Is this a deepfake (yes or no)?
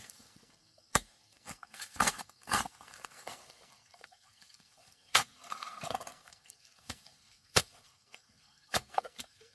yes